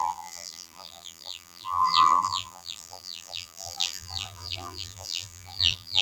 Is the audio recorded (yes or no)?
no